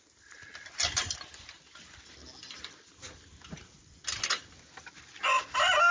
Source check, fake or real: real